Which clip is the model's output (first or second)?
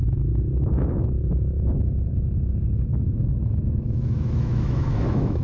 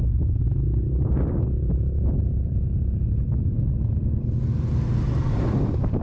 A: first